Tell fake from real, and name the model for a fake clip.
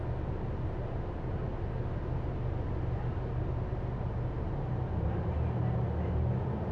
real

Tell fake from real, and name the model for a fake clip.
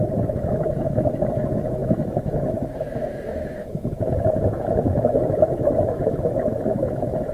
fake, autoencoder, DAC-VAE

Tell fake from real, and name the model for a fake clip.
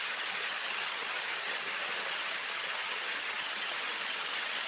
fake, vocoder, HiFi-GAN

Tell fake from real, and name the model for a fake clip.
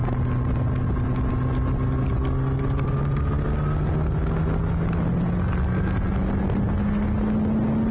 real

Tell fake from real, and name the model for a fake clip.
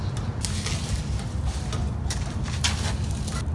real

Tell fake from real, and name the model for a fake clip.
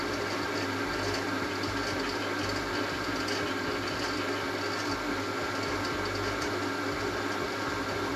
real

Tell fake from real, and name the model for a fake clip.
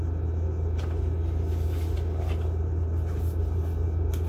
real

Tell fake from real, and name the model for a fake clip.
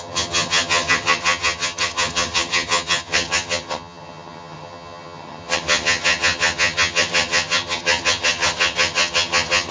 fake, vocoder, HiFi-GAN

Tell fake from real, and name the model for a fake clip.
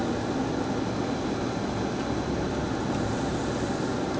real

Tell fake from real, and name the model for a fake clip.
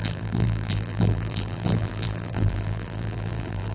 fake, vocoder, BigVGAN v2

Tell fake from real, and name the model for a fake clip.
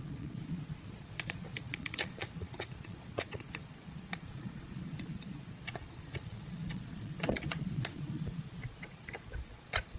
fake, vocoder, Vocos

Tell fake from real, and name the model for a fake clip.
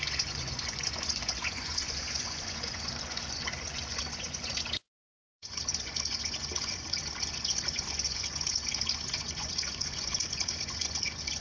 fake, vocoder, Vocos